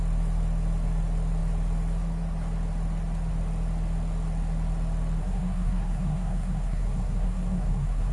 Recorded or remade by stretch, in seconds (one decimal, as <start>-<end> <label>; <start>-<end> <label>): 0.0-5.2 recorded; 5.2-8.1 remade